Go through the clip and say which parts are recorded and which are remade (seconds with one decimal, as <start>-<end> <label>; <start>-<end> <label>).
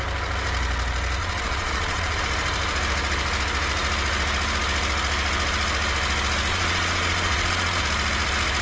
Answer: 0.0-1.2 recorded; 1.2-2.2 remade; 2.2-6.5 recorded; 6.5-7.8 remade; 7.8-8.6 recorded